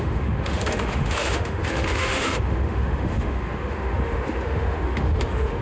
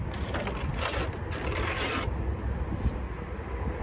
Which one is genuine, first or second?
second